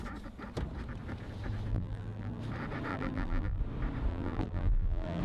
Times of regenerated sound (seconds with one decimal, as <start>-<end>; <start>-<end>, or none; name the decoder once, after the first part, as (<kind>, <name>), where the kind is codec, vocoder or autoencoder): 1.7-2.4 (vocoder, BigVGAN v2); 2.9-3.6; 4.1-5.2